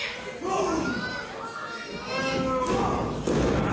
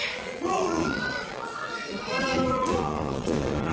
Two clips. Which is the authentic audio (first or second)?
first